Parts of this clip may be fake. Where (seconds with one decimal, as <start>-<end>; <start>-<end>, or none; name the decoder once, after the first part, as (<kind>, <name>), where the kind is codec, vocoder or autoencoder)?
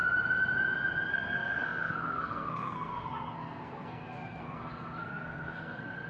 1.1-6.1 (codec, SNAC)